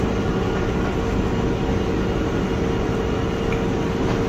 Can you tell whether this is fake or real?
real